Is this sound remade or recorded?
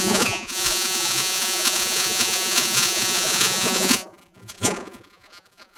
remade